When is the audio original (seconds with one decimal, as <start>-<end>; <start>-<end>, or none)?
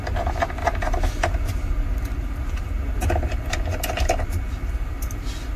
0.0-5.6